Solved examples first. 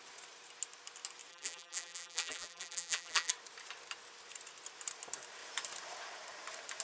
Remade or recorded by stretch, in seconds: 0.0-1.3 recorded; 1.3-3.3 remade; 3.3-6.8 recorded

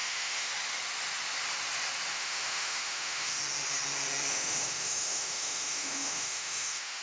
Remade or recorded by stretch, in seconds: 0.0-0.5 remade; 0.5-2.1 recorded; 2.1-3.4 remade; 3.4-4.3 recorded; 4.3-7.0 remade

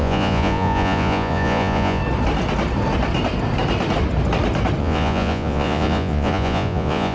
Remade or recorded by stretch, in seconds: 0.0-2.0 remade; 2.0-4.8 recorded; 4.8-7.1 remade

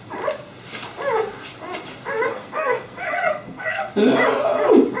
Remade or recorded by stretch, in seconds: 0.0-2.3 recorded; 2.3-3.9 remade; 3.9-5.0 recorded

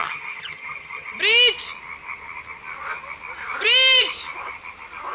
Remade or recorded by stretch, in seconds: 0.0-1.2 remade; 1.2-5.1 recorded

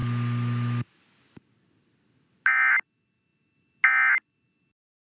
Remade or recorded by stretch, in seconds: 0.0-5.1 recorded

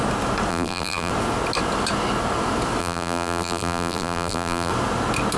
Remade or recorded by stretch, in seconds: 0.0-0.5 recorded; 0.5-1.1 remade; 1.1-2.8 recorded; 2.8-4.7 remade; 4.7-5.4 recorded